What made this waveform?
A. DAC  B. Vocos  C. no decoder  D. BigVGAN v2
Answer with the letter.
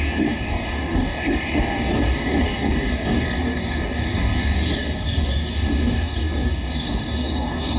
A